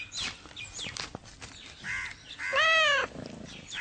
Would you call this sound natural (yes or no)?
yes